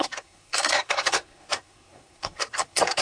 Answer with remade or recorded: remade